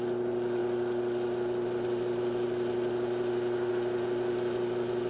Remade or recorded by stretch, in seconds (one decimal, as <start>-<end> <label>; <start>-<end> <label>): 0.0-5.1 recorded